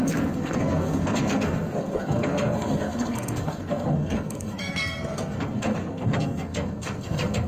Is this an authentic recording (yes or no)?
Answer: no